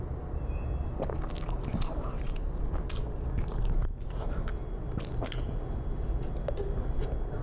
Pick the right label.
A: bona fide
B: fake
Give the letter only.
A